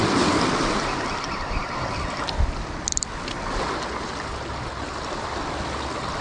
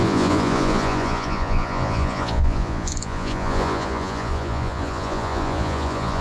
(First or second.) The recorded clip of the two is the first